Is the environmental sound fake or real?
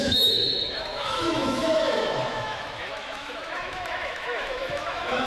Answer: fake